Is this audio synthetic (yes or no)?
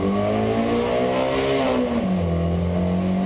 no